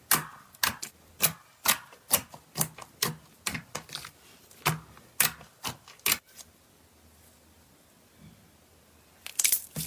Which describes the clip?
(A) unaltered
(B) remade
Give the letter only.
A